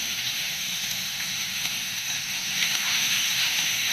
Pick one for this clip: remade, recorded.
remade